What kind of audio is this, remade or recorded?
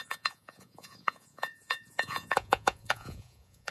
remade